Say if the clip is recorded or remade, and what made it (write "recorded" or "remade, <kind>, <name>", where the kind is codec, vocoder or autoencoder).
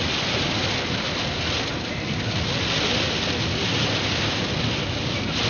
recorded